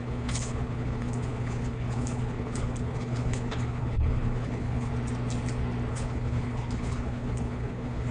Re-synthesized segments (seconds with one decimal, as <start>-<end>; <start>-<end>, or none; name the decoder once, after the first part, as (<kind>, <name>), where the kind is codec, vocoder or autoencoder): 0.0-4.9 (codec, HILCodec); 5.9-8.1